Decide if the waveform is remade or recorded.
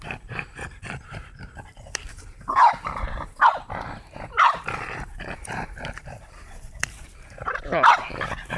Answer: remade